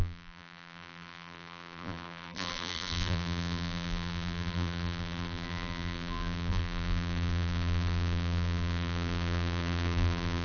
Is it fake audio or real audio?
fake